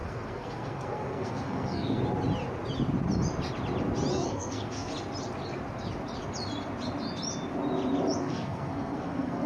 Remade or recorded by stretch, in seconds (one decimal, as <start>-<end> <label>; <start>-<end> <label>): 0.0-2.0 remade; 2.0-4.1 recorded; 4.1-4.9 remade; 4.9-8.2 recorded; 8.2-9.5 remade